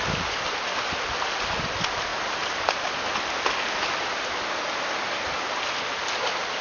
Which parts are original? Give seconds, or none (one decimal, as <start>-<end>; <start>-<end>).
0.0-6.6